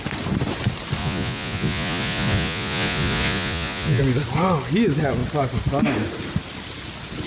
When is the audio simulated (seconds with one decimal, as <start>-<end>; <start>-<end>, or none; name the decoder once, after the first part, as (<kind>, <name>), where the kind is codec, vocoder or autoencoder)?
1.0-4.0 (vocoder, Vocos)